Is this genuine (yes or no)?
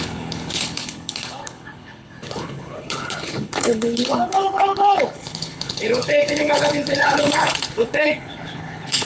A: no